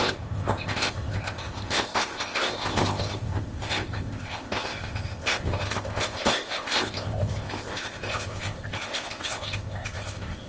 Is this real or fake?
fake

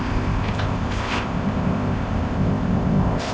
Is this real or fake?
fake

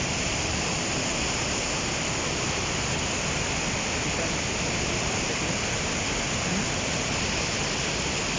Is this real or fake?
real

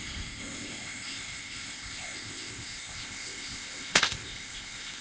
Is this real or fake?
fake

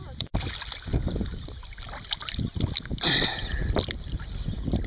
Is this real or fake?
real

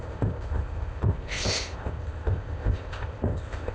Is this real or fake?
fake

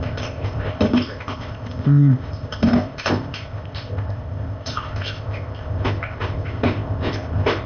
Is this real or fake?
fake